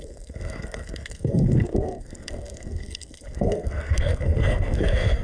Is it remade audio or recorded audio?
remade